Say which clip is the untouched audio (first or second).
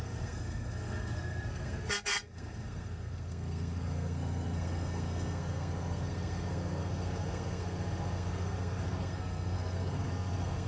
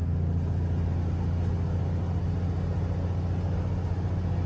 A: second